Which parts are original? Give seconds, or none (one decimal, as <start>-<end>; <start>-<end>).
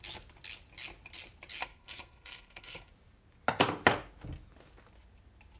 0.0-1.6; 2.9-5.6